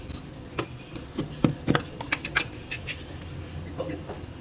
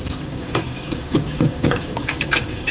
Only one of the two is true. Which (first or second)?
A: first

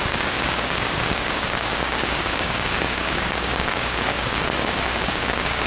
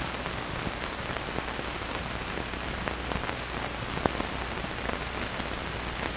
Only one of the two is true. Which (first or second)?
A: second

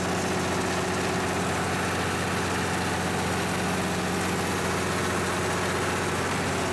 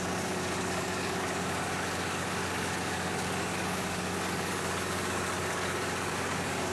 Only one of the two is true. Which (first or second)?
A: first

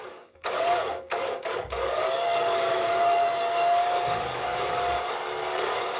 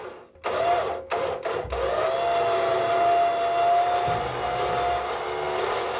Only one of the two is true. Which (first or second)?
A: second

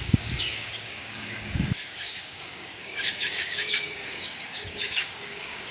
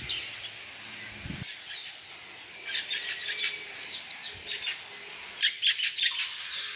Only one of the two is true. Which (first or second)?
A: second